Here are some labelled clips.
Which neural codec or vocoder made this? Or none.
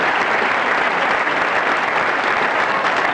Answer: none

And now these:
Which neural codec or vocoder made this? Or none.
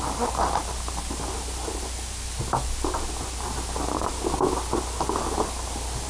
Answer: none